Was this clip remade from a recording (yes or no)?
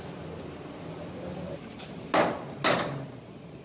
no